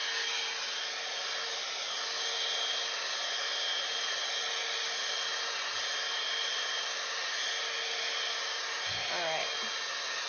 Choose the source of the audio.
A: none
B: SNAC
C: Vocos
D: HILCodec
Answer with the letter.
A